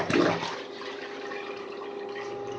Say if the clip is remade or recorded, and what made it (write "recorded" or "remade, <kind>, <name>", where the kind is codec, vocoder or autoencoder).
recorded